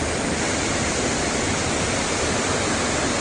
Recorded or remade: recorded